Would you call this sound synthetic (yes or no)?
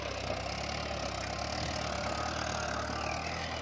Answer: no